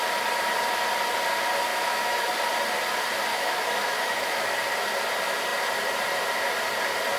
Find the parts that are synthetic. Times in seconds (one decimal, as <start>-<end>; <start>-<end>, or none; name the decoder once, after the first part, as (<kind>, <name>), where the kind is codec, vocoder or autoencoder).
1.7-2.3 (autoencoder, DAC-VAE); 3.3-4.5